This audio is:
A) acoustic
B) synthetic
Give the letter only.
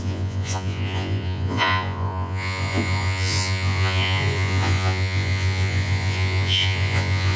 B